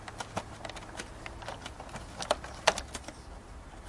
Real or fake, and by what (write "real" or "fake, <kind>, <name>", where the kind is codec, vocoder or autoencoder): real